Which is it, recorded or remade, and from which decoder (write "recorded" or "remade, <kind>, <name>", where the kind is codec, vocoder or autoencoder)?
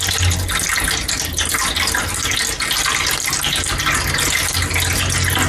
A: recorded